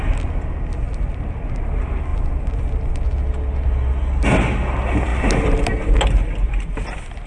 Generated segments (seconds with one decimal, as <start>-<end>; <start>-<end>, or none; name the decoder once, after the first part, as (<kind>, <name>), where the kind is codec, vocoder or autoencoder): none